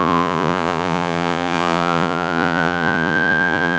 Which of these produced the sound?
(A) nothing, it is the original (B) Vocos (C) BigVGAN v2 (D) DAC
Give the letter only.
B